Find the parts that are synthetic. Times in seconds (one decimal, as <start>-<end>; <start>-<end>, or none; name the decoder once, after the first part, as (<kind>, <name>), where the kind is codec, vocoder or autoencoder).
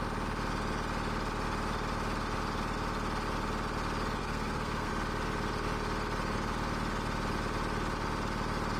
4.2-4.9 (codec, SNAC)